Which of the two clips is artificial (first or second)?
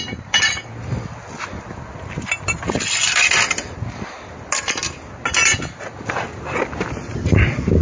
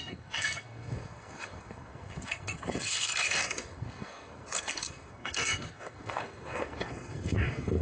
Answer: second